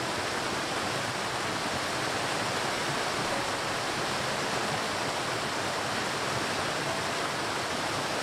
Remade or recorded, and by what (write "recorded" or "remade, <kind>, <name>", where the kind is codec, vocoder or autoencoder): recorded